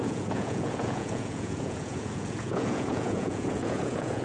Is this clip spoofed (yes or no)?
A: yes